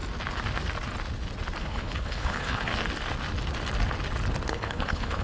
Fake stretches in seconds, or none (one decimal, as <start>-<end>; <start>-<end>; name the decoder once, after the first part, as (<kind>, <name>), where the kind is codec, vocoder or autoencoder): 1.6-2.7 (codec, HILCodec); 4.5-5.2